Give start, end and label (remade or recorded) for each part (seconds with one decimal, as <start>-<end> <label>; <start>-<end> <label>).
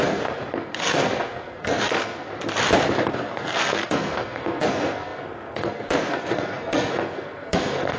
0.0-2.3 remade; 2.3-3.1 recorded; 3.1-8.0 remade